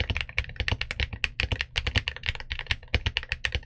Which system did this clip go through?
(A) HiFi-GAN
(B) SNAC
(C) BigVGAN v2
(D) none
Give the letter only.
D